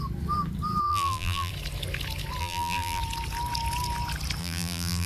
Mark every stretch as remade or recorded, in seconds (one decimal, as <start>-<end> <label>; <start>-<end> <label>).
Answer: 0.0-0.9 recorded; 0.9-1.5 remade; 1.5-2.4 recorded; 2.4-3.0 remade; 3.0-4.4 recorded; 4.4-5.1 remade